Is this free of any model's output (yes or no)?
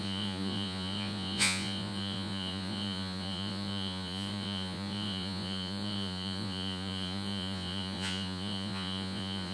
no